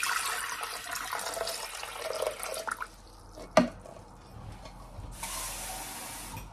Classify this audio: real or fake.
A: real